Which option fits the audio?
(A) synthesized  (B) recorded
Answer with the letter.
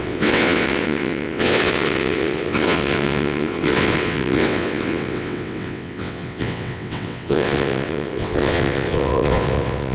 A